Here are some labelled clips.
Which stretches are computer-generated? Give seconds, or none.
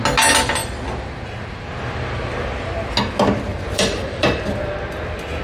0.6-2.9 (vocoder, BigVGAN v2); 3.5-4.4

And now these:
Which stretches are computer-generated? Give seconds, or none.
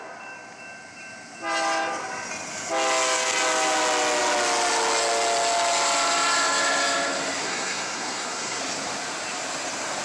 7.4-8.6 (codec, SNAC)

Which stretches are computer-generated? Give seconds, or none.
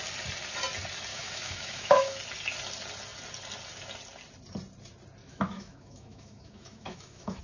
1.1-2.2 (autoencoder, DAC-VAE); 5.2-7.4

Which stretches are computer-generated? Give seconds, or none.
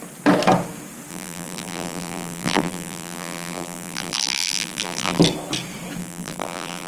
1.1-5.2 (vocoder, BigVGAN v2); 6.0-6.9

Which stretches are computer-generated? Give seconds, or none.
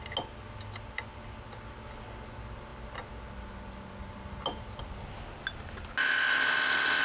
none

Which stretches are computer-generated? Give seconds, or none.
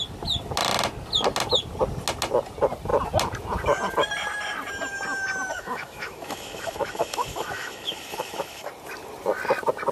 5.5-8.7 (autoencoder, DAC-VAE)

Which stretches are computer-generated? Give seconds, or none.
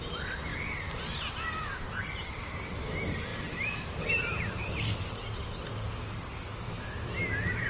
6.5-7.2 (autoencoder, DAC-VAE)